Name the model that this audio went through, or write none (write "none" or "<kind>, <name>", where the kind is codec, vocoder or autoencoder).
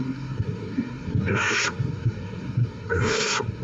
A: codec, SNAC